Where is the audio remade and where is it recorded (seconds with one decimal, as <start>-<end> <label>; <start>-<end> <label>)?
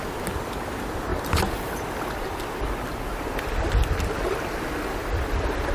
0.0-5.7 recorded